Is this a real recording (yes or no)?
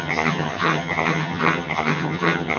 no